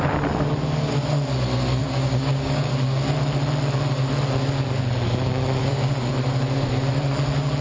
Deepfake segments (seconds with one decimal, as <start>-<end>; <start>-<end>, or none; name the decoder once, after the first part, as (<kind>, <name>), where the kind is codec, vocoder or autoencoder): 1.8-2.7 (codec, DAC); 5.6-6.1